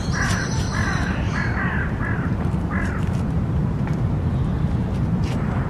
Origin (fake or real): fake